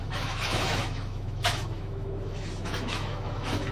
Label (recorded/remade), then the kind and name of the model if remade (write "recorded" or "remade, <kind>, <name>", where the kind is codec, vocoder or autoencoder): remade, autoencoder, DAC-VAE